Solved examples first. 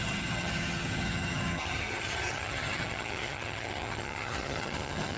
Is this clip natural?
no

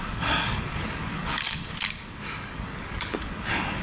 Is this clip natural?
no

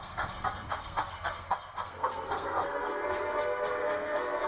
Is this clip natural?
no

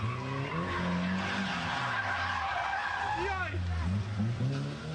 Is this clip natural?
yes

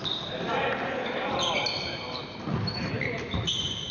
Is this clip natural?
no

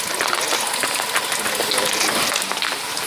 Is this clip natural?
yes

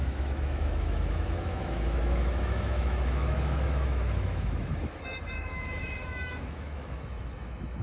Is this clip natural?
no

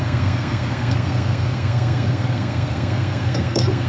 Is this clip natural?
no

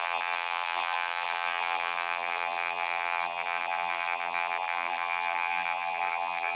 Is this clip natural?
no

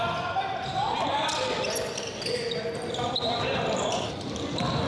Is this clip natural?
yes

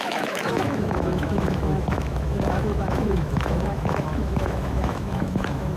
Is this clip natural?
no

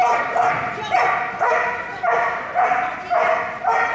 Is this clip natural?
yes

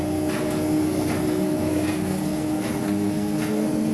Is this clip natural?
no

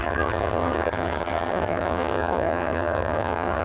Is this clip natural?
no